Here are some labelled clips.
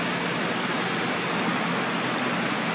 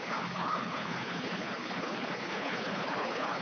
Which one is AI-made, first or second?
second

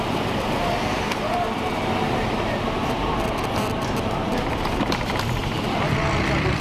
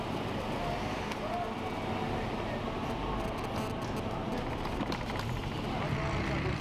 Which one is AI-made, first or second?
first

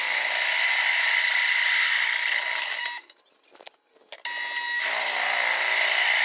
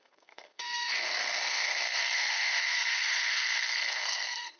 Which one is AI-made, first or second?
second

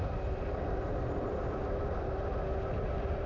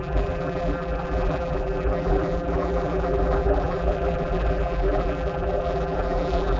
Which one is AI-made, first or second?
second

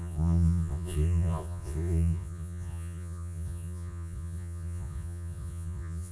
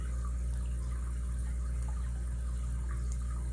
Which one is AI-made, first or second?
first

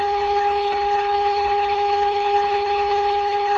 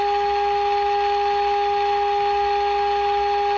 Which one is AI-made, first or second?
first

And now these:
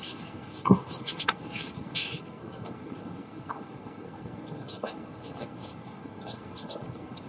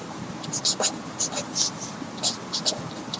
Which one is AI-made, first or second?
first